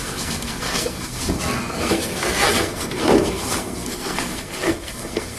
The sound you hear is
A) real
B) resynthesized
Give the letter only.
B